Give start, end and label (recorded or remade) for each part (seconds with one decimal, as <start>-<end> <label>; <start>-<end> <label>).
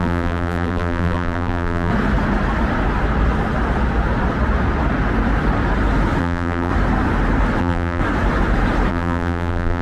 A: 0.0-1.9 remade; 1.9-6.2 recorded; 6.2-6.7 remade; 6.7-7.6 recorded; 7.6-8.0 remade; 8.0-8.9 recorded; 8.9-9.8 remade